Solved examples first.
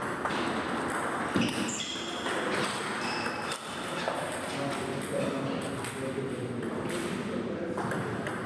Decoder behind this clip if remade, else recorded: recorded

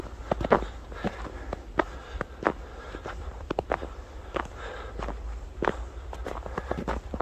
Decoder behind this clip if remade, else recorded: recorded